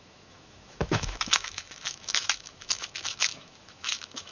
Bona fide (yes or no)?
no